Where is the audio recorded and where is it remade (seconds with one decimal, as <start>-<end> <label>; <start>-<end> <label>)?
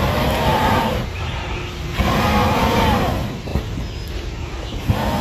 0.0-0.5 recorded; 0.5-1.6 remade; 1.6-5.2 recorded